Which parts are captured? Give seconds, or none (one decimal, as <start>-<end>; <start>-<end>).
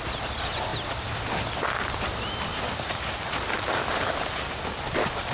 0.7-1.9